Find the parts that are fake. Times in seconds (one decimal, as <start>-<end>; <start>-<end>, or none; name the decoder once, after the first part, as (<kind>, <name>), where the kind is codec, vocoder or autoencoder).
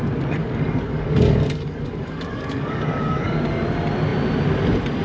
0.4-3.4 (codec, DAC)